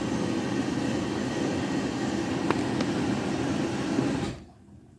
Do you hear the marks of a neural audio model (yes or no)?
no